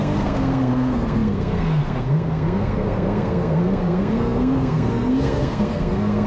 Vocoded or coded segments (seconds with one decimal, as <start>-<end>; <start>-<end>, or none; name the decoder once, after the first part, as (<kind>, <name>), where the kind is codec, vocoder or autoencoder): 0.0-6.3 (codec, SNAC)